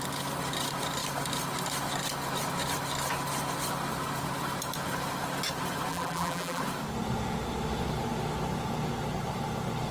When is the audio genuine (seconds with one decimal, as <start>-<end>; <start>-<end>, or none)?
0.0-5.9; 6.6-9.9